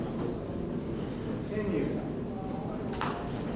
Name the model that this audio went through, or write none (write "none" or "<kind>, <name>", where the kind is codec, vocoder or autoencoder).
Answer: none